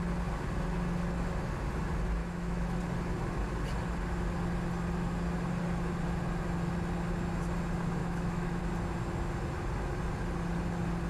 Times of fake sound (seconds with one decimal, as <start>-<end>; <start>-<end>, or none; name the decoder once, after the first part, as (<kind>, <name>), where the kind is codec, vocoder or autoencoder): 2.2-2.8 (autoencoder, DAC-VAE); 8.0-8.6